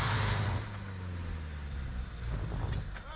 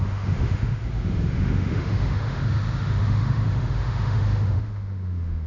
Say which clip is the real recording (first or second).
first